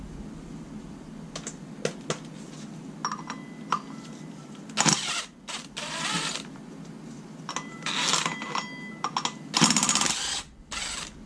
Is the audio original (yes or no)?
yes